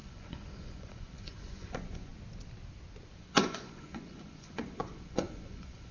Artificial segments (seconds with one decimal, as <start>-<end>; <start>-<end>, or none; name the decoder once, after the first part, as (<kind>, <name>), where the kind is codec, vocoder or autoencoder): 0.0-2.1 (vocoder, Vocos); 3.1-5.9